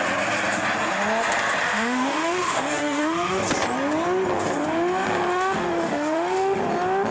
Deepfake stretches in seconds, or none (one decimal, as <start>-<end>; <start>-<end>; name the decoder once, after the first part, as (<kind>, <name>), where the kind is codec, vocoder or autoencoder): 1.6-3.4 (autoencoder, DAC-VAE); 5.3-6.6